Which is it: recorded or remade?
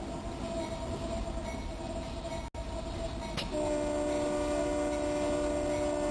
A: recorded